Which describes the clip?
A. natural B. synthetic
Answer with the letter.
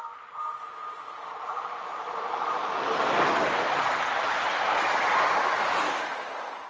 A